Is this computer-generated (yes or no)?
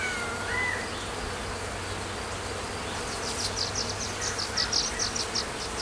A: no